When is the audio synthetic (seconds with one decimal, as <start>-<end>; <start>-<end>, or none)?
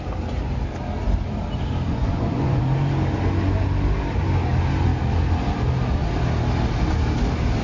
1.9-2.6